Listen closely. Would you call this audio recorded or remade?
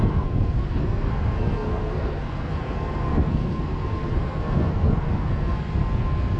remade